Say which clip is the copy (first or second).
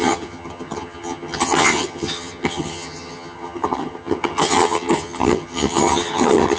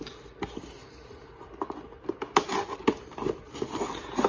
first